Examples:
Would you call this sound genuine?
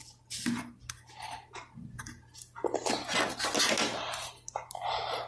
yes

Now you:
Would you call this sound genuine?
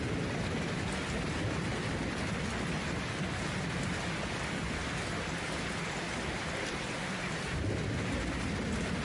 yes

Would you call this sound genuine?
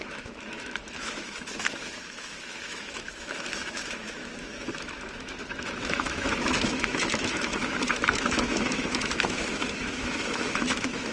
no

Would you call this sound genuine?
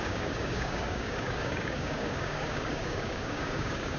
no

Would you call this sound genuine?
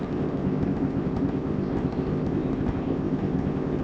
no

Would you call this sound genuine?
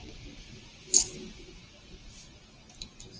yes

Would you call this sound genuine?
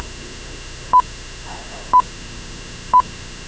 no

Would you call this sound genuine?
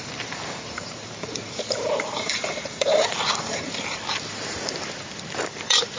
no